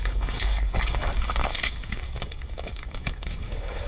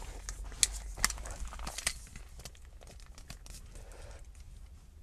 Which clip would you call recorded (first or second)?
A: second